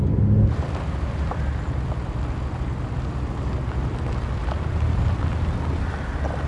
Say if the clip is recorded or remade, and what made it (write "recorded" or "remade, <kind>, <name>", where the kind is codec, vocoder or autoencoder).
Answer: recorded